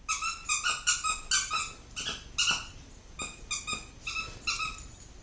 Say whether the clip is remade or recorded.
recorded